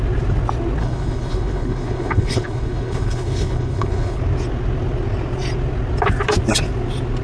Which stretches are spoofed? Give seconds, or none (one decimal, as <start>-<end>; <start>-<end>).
0.8-4.2